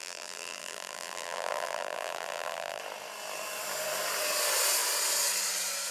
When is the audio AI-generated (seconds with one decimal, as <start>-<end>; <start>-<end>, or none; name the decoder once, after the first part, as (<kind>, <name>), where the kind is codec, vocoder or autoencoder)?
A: 0.0-2.8 (vocoder, BigVGAN v2)